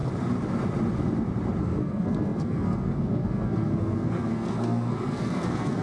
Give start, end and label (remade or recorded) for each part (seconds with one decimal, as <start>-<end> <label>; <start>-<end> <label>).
0.0-1.6 recorded; 1.6-5.8 remade